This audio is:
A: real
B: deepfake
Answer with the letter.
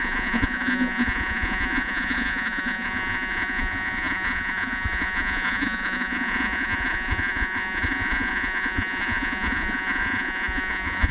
B